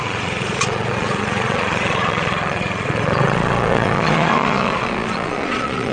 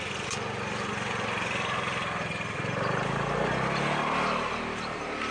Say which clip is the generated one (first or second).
first